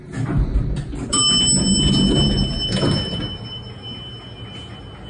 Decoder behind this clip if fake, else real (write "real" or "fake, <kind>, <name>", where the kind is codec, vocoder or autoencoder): real